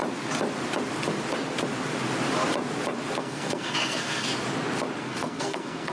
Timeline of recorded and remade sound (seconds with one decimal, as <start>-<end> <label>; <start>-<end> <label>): 0.0-3.2 recorded; 3.2-4.3 remade; 4.3-5.0 recorded; 5.0-5.9 remade